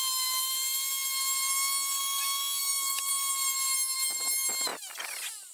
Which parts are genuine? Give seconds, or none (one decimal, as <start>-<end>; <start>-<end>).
0.0-2.6; 3.1-5.5